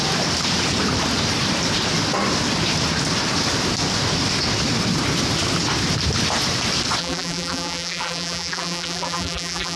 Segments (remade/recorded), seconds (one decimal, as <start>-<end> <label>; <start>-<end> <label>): 0.0-7.0 recorded; 7.0-9.8 remade